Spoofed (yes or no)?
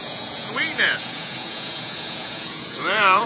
yes